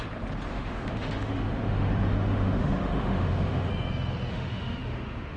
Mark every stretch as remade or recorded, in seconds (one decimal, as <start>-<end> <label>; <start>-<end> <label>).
0.0-0.5 recorded; 0.5-3.7 remade; 3.7-4.3 recorded; 4.3-5.4 remade